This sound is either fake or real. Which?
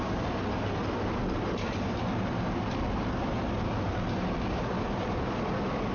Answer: real